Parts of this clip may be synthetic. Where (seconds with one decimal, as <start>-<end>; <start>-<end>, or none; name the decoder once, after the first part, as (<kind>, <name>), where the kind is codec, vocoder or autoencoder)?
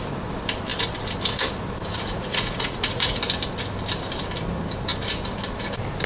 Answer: 1.9-3.2 (vocoder, Vocos)